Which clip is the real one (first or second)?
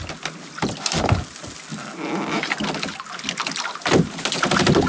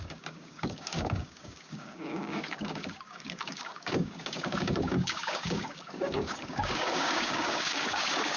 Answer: first